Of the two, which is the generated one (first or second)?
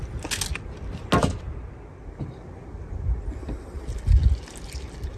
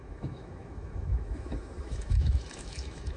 second